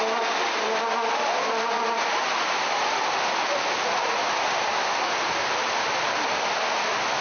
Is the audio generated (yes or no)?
no